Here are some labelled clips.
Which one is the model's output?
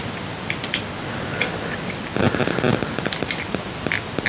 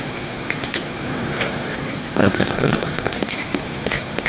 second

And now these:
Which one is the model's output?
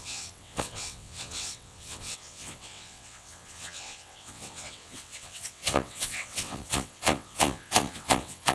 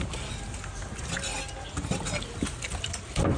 first